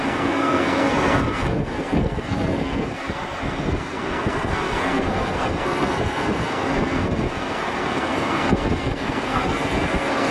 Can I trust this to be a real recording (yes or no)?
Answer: no